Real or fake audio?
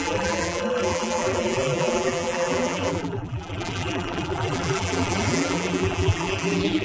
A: fake